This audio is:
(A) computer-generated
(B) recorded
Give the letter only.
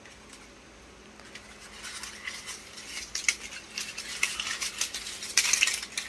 B